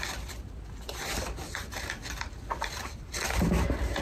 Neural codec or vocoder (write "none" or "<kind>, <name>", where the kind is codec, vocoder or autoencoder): none